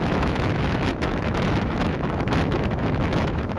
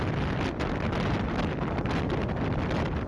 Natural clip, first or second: second